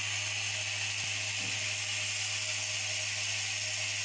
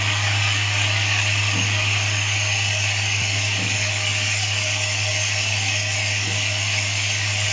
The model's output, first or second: second